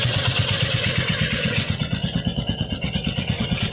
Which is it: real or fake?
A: fake